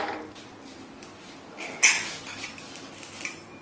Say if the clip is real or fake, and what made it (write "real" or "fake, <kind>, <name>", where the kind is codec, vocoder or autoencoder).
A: real